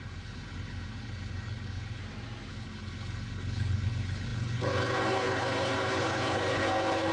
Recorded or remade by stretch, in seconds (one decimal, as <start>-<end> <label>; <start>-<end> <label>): 0.0-2.0 remade; 2.0-2.5 recorded; 2.5-7.1 remade